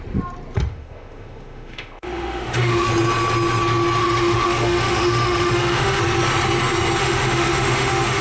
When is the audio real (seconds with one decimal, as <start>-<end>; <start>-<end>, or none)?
0.0-0.7; 2.9-4.0; 6.0-7.0